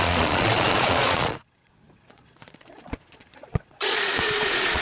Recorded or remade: remade